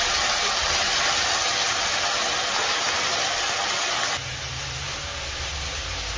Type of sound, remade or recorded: recorded